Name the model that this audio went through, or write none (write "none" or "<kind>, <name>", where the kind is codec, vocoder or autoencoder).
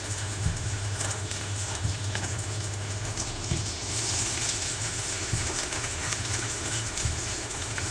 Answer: autoencoder, DAC-VAE